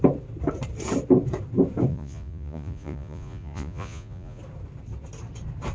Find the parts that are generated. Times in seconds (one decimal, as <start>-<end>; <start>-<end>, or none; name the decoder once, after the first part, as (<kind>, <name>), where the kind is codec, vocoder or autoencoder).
1.9-4.4 (vocoder, Vocos)

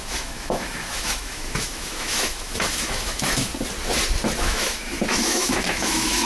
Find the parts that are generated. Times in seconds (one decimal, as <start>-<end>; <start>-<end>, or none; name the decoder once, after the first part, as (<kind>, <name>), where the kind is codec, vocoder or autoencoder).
0.0-3.5 (autoencoder, DAC-VAE); 4.4-6.3

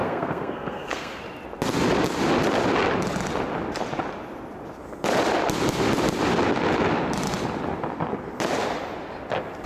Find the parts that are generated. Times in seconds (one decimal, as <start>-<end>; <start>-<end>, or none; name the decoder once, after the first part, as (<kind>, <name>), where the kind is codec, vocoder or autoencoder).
0.0-1.2 (codec, SNAC)

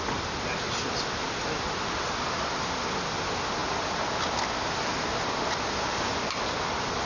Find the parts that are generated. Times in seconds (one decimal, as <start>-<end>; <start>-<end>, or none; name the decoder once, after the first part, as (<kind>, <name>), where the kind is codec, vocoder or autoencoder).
none

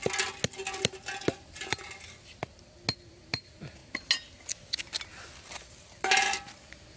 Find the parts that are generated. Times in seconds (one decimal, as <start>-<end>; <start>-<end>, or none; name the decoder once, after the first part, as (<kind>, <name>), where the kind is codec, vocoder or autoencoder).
none